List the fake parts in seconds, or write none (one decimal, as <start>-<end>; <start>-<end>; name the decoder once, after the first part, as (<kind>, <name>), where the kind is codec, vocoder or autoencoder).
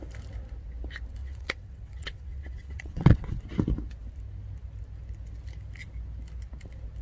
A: 1.2-3.4 (vocoder, WaveNeXt)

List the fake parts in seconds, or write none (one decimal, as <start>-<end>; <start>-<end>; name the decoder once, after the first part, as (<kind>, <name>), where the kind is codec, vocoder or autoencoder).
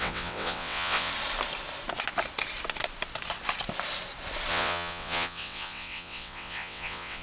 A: 0.0-1.1 (vocoder, WaveNeXt); 4.5-7.2